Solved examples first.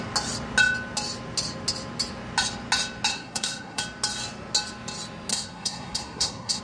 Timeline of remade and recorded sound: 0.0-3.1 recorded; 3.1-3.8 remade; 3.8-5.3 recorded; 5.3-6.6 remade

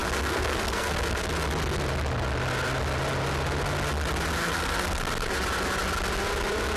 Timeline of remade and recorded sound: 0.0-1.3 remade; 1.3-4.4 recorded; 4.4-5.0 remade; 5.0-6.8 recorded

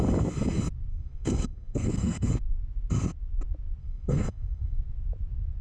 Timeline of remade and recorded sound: 0.0-0.9 recorded; 0.9-2.3 remade; 2.3-3.8 recorded; 3.8-4.8 remade; 4.8-5.6 recorded

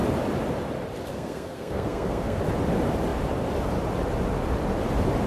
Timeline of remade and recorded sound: 0.0-1.1 recorded; 1.1-2.4 remade; 2.4-5.3 recorded